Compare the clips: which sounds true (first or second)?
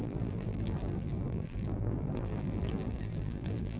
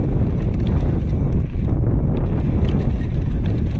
second